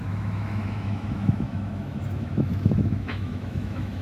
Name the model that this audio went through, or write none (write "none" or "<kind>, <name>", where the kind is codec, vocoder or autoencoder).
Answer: autoencoder, DAC-VAE